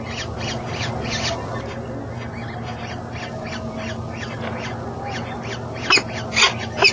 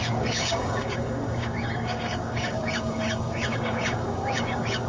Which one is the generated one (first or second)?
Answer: second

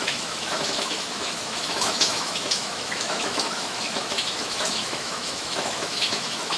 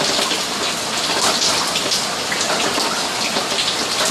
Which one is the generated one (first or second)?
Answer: first